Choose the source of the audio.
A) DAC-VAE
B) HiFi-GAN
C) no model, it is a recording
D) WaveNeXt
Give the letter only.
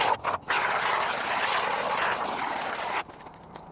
C